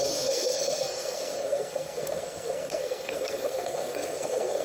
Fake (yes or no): yes